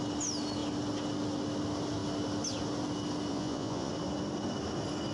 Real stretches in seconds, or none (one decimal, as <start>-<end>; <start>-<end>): 0.0-3.3; 3.9-5.1